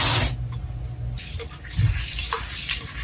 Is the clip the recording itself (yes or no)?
yes